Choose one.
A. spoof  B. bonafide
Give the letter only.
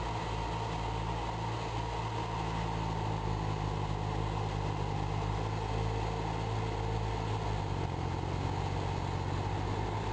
B